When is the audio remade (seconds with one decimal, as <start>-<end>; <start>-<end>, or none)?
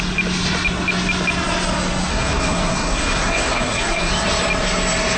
2.1-4.1